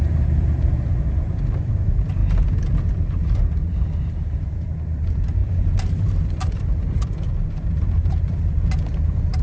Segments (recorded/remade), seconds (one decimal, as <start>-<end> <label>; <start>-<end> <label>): 0.0-2.2 remade; 2.2-2.9 recorded; 2.9-9.4 remade